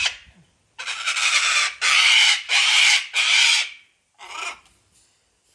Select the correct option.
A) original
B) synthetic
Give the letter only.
B